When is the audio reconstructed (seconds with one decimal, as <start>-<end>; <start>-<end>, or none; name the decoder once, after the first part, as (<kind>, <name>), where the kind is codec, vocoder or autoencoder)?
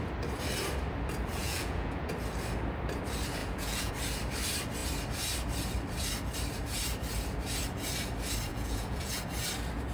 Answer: 1.4-2.1 (vocoder, Vocos); 3.4-3.9; 8.5-9.2